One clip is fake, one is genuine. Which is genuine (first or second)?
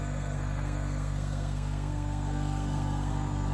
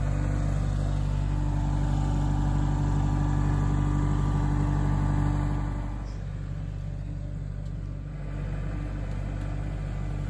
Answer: second